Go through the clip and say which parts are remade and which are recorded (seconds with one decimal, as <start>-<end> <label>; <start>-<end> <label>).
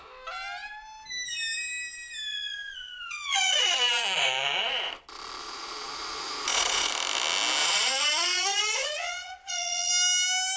0.0-2.3 recorded; 2.3-4.9 remade; 4.9-5.4 recorded; 5.4-6.9 remade; 6.9-7.6 recorded; 7.6-9.9 remade; 9.9-10.6 recorded